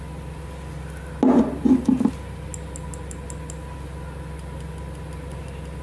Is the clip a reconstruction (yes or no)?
no